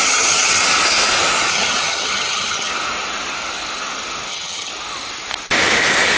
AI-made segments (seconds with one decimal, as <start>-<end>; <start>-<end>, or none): 0.0-0.6; 1.5-2.7; 4.3-4.7